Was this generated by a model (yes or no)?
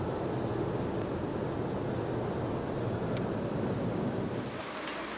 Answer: no